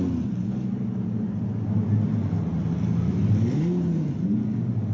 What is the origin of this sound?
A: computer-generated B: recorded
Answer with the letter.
B